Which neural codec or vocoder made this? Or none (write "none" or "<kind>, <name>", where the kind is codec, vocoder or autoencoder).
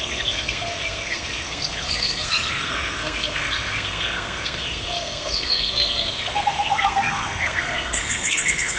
codec, SNAC